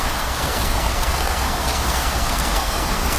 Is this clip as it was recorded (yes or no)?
no